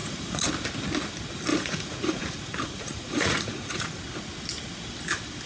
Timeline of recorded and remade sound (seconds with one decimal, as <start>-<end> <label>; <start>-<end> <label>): 0.0-0.5 remade; 0.5-1.5 recorded; 1.5-4.0 remade; 4.0-5.5 recorded